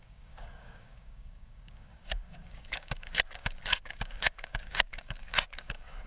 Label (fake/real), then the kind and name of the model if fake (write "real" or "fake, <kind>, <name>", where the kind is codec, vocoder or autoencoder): fake, codec, DAC